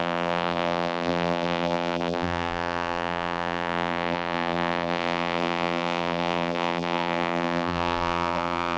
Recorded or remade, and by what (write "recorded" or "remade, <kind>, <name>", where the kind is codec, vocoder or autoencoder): remade, vocoder, BigVGAN v2